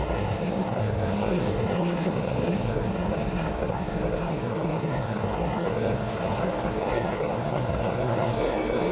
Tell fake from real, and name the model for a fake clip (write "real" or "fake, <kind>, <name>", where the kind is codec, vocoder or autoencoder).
fake, codec, SNAC